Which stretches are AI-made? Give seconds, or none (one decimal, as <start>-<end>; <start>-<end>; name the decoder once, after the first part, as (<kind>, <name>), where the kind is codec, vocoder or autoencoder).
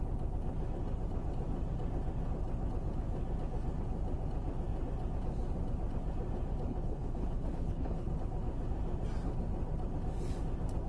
6.7-8.1 (codec, HILCodec)